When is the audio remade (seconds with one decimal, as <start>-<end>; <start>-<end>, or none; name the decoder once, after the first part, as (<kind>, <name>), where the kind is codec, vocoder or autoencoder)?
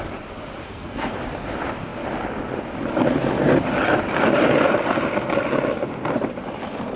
0.6-1.2 (codec, SNAC)